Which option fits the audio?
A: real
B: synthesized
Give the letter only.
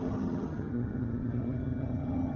B